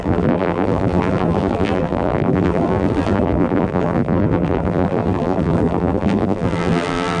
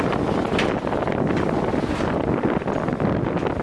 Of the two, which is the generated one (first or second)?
first